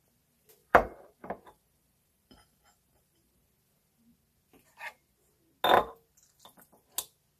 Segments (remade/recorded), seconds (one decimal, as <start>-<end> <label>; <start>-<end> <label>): 0.0-0.6 recorded; 0.6-3.4 remade; 3.4-7.4 recorded